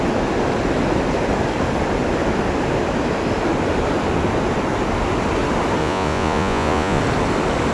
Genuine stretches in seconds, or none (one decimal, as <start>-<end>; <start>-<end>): 0.0-5.8; 7.0-7.7